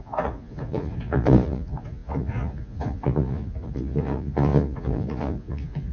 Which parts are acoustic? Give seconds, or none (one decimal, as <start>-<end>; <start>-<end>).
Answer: none